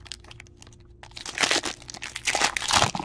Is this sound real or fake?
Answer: real